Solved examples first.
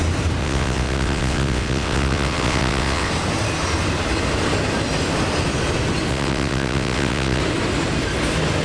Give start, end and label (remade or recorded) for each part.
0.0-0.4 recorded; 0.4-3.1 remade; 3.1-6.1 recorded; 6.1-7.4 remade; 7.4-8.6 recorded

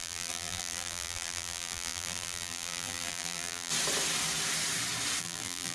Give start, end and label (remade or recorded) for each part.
0.0-3.7 remade; 3.7-5.2 recorded; 5.2-5.7 remade